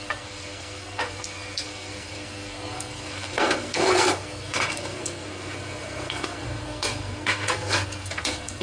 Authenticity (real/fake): fake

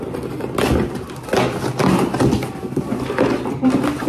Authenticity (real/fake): real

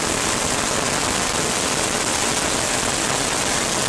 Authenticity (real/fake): real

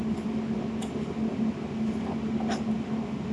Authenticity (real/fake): real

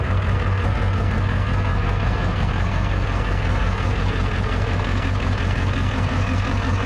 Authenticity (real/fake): fake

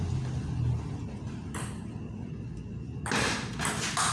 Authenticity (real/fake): real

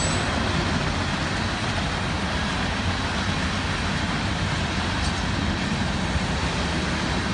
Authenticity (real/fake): real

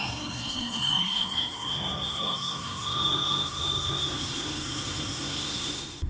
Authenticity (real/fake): fake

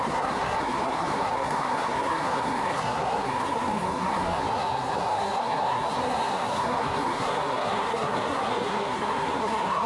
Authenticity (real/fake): fake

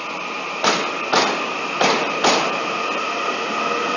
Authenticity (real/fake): real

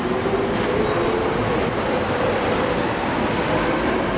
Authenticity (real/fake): real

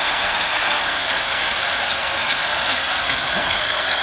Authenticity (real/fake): fake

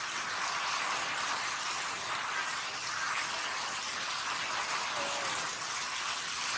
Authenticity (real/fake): real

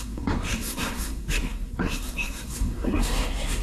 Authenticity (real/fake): fake